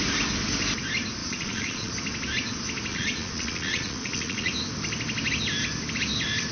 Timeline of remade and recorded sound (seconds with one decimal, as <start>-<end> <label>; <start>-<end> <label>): 0.0-1.2 recorded; 1.2-1.9 remade; 1.9-2.9 recorded; 2.9-4.5 remade; 4.5-6.5 recorded